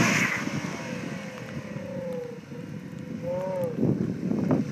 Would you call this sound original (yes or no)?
yes